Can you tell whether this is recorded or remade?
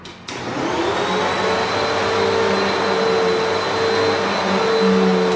recorded